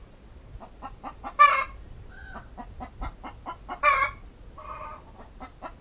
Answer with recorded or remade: recorded